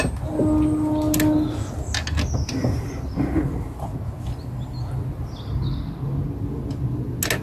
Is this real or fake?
real